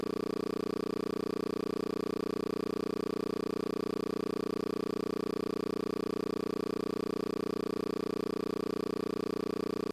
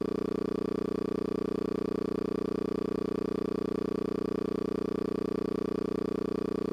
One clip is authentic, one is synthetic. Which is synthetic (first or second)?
second